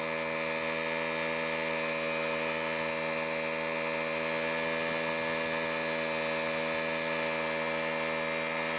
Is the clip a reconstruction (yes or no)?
no